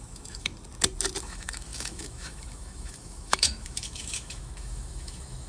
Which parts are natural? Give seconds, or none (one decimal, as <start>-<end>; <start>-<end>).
0.5-1.2